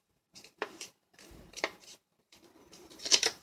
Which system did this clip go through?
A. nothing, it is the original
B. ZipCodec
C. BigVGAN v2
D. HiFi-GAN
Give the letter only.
C